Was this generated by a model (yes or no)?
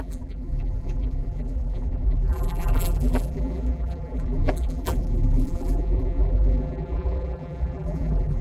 yes